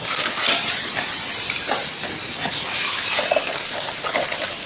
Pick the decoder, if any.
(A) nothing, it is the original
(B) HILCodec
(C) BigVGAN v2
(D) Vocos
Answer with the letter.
A